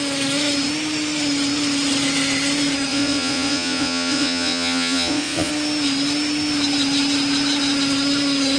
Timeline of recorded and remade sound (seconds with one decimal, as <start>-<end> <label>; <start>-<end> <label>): 0.0-2.9 recorded; 2.9-5.5 remade; 5.5-8.6 recorded